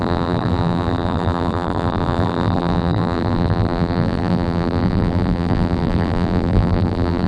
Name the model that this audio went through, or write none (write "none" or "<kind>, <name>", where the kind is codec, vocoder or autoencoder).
vocoder, BigVGAN v2